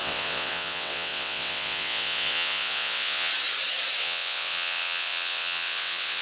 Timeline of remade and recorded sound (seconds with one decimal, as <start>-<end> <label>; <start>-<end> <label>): 0.0-3.3 remade; 3.3-4.0 recorded; 4.0-6.2 remade